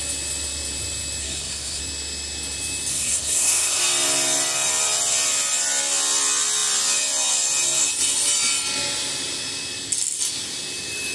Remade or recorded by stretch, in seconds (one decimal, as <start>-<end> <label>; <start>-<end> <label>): 0.0-1.2 recorded; 1.2-1.8 remade; 1.8-2.9 recorded; 2.9-3.8 remade; 3.8-11.1 recorded